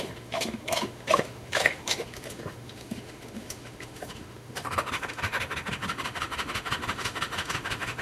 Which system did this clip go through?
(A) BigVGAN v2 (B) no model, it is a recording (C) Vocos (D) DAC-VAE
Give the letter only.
D